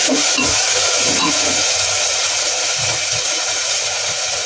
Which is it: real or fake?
fake